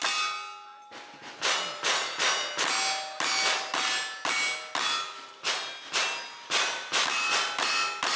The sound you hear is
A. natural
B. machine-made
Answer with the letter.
A